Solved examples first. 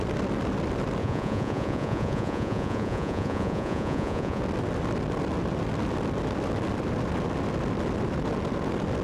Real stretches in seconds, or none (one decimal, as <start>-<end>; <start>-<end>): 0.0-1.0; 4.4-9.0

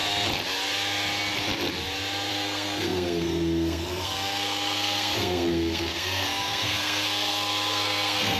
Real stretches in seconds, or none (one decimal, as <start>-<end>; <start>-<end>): 0.0-2.3

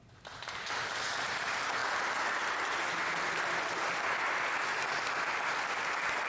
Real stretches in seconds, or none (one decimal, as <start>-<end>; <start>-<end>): 0.0-6.3

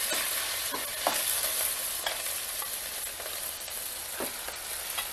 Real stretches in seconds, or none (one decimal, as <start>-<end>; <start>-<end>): 0.0-5.1

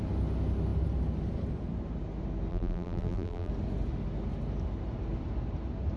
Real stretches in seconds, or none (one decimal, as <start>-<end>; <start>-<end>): 0.0-2.5; 3.5-6.0

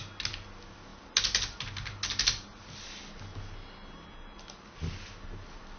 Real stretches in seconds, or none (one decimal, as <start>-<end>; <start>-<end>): 0.0-5.8

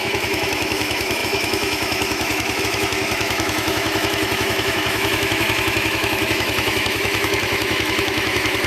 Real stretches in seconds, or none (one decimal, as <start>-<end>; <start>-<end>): none

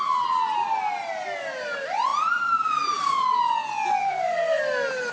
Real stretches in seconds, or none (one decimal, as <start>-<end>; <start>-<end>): 0.0-4.0; 4.6-5.1